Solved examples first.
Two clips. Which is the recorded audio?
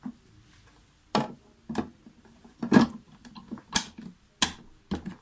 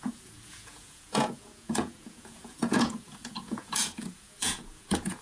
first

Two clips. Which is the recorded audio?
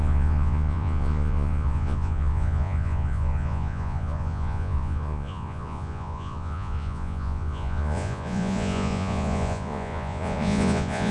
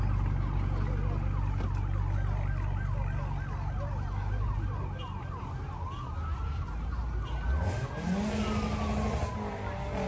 second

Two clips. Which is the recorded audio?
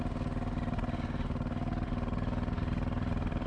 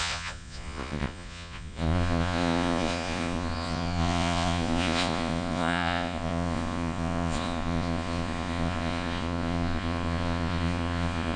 first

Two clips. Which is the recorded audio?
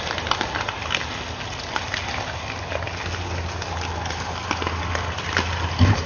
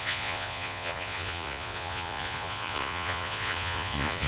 first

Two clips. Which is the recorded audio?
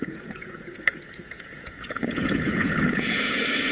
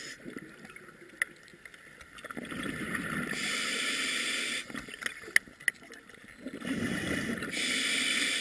second